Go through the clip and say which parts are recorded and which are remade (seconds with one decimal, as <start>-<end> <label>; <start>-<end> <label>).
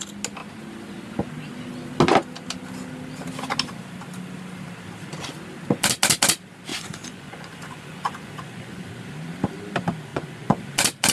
0.0-6.7 recorded; 6.7-8.9 remade; 8.9-10.1 recorded; 10.1-10.6 remade; 10.6-11.1 recorded